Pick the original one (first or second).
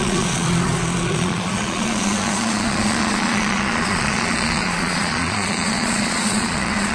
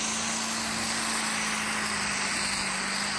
second